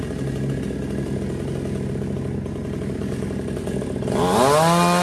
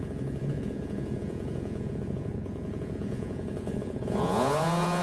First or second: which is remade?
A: second